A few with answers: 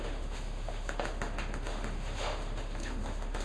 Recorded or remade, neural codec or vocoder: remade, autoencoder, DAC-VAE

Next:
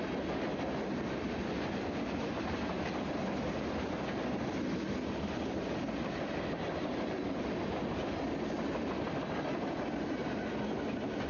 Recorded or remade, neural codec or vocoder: recorded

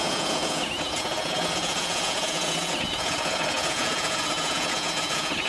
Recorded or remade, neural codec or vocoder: remade, vocoder, Vocos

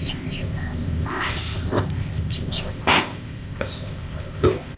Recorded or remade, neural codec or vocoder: remade, codec, ZipCodec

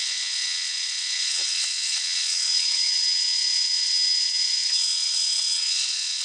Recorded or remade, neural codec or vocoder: remade, vocoder, WaveNeXt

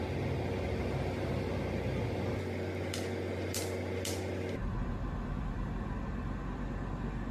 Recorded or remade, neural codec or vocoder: recorded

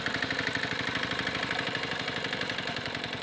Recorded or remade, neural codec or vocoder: remade, vocoder, BigVGAN v2